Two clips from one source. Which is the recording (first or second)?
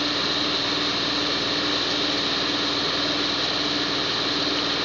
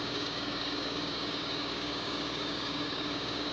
first